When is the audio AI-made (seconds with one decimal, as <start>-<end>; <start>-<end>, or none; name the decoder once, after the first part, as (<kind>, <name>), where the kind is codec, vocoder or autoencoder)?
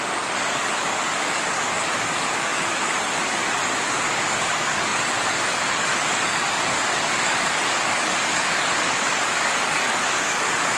0.0-10.8 (codec, DAC)